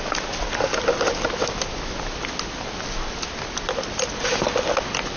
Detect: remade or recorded recorded